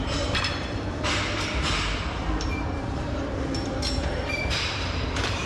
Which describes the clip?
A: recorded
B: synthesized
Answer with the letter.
B